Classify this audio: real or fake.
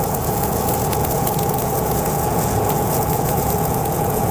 fake